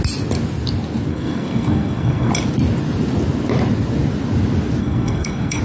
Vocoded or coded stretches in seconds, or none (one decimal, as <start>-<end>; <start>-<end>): 1.1-2.3; 4.8-5.6